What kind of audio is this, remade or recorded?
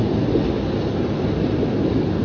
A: recorded